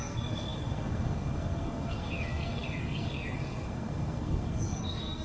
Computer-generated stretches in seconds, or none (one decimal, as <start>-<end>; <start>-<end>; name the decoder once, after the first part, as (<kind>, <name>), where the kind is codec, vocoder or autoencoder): 0.0-5.2 (codec, SNAC)